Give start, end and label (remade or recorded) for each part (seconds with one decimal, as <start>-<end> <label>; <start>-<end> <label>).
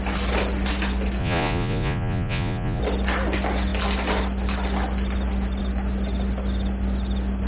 0.0-1.2 recorded; 1.2-2.8 remade; 2.8-7.5 recorded